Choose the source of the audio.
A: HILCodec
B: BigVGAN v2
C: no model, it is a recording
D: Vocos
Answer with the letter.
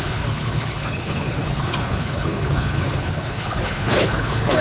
A